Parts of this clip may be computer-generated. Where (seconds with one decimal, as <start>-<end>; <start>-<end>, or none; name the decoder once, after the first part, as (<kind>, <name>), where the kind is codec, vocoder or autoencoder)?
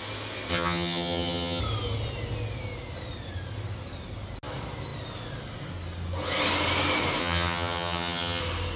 0.5-1.6 (vocoder, HiFi-GAN); 7.2-8.4